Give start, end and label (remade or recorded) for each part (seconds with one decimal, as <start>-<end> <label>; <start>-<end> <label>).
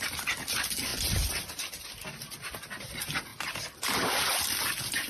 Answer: 0.0-5.1 recorded